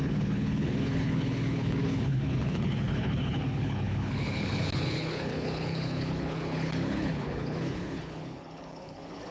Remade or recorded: remade